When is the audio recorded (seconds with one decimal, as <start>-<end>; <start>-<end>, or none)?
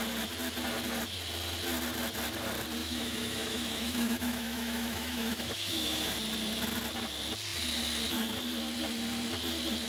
0.0-2.8; 6.1-9.9